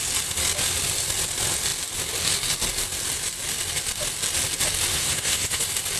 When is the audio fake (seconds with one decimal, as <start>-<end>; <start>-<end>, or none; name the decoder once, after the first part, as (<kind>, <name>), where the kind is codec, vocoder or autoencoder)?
4.9-5.6 (codec, SNAC)